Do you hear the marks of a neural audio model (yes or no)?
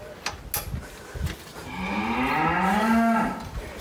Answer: no